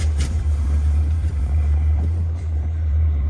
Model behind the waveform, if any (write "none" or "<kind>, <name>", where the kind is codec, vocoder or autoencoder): vocoder, BigVGAN v2